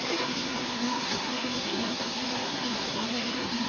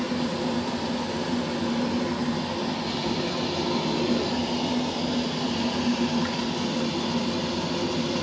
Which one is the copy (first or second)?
first